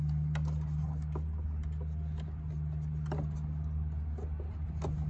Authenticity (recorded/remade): recorded